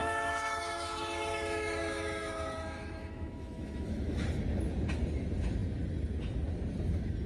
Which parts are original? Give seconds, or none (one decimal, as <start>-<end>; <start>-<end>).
4.4-7.3

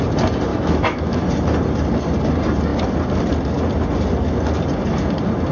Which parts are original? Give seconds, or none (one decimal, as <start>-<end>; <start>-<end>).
0.0-0.5; 1.2-5.5